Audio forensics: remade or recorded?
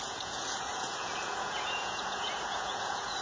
remade